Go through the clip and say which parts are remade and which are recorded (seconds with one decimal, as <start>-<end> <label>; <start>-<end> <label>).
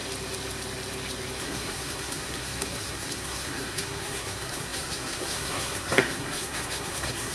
0.0-1.4 recorded; 1.4-7.3 remade